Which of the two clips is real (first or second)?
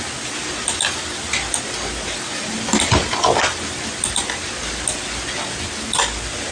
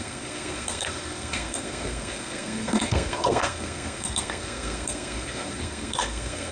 first